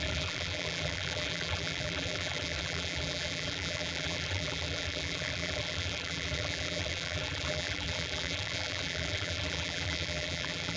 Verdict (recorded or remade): remade